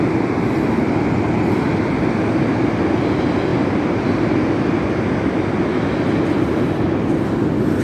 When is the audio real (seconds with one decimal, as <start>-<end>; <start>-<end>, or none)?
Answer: 0.0-7.8